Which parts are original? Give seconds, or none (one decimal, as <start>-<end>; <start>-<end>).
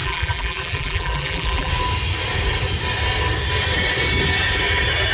1.7-5.1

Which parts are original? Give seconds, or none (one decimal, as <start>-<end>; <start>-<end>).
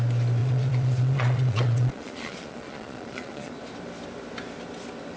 0.0-0.4; 3.5-5.2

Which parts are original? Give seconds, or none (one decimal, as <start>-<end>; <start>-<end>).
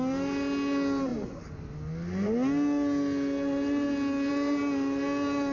0.0-5.5